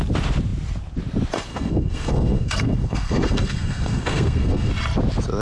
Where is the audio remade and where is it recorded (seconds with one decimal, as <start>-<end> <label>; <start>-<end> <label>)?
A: 0.0-1.5 recorded; 1.5-4.7 remade; 4.7-5.4 recorded